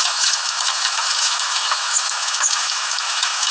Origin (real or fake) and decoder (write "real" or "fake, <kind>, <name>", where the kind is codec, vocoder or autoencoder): fake, autoencoder, DAC-VAE